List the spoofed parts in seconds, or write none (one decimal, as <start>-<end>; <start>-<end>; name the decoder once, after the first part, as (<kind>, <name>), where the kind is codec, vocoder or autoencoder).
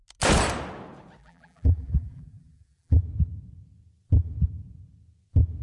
1.2-3.0 (vocoder, BigVGAN v2)